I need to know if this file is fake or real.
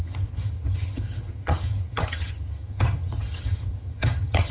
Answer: fake